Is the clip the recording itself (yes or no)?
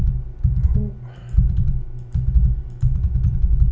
yes